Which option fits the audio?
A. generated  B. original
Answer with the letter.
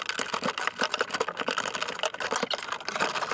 B